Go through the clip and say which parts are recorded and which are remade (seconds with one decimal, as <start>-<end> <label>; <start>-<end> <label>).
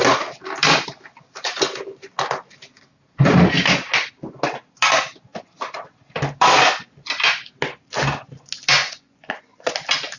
0.0-8.8 recorded; 8.8-9.7 remade; 9.7-10.2 recorded